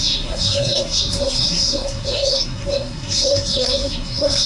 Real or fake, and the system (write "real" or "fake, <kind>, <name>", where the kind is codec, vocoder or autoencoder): fake, codec, SNAC